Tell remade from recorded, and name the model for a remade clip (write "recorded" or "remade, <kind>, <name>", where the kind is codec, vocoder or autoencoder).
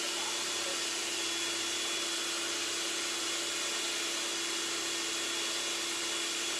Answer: recorded